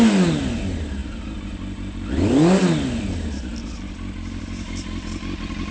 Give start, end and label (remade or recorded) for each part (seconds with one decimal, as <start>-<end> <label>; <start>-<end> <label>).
0.0-5.7 recorded